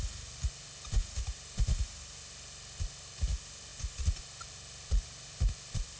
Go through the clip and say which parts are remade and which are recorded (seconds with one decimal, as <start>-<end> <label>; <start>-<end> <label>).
0.0-6.0 recorded

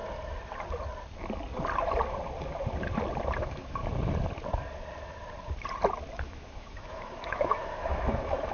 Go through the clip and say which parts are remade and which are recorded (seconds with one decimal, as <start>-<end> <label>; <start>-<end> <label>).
0.0-3.4 recorded; 3.4-3.8 remade; 3.8-6.2 recorded; 6.2-8.5 remade